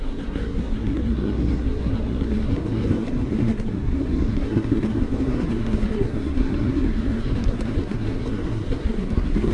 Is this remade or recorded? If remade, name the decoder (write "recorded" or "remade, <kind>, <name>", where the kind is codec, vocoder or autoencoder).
remade, codec, SNAC